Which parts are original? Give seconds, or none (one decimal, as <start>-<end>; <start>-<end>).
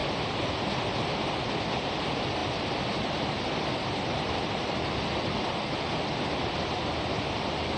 2.4-6.4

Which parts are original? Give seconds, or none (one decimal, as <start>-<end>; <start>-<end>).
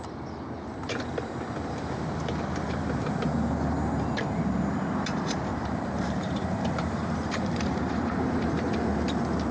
0.0-5.5; 8.7-9.5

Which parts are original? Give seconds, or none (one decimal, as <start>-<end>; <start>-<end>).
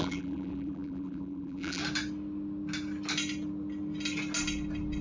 1.8-5.0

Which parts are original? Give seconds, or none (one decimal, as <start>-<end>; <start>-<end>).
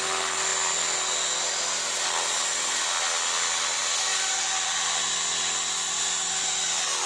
0.0-7.1